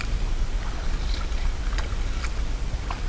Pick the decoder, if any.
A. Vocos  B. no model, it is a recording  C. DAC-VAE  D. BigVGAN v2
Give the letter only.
B